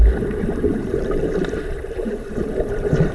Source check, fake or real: fake